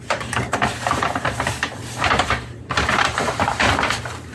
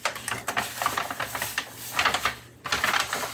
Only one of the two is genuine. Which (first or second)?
second